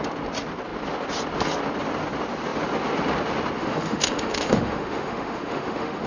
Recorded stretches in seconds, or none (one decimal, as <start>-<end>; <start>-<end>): 0.0-3.6